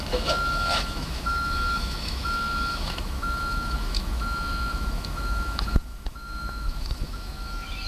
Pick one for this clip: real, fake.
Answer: fake